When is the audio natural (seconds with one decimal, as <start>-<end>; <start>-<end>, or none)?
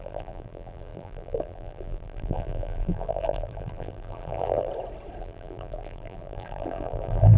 4.7-5.2